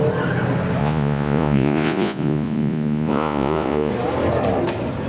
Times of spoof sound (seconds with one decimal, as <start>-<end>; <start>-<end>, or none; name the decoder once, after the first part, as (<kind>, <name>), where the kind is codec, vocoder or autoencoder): 0.8-3.9 (vocoder, Vocos)